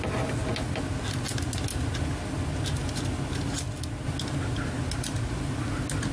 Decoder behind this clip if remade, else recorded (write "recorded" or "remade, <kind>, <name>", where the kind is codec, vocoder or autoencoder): recorded